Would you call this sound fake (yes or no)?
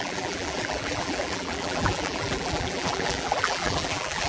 yes